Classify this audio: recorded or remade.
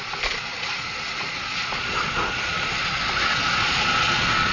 remade